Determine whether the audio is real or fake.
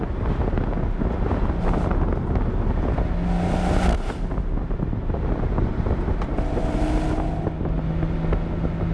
real